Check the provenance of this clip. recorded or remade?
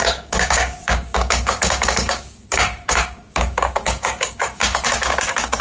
remade